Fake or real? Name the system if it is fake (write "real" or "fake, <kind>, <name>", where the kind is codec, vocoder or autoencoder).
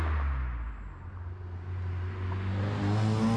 real